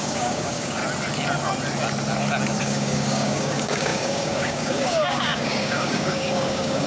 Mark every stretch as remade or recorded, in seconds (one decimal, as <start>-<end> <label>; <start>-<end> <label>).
0.0-0.8 remade; 0.8-2.6 recorded; 2.6-6.9 remade